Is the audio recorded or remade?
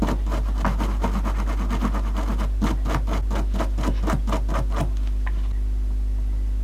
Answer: recorded